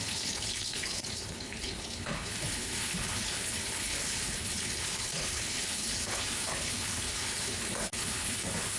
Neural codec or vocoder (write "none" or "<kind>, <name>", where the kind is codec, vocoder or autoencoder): codec, HILCodec